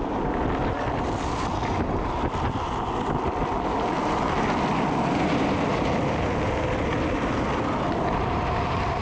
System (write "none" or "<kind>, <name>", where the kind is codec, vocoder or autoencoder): none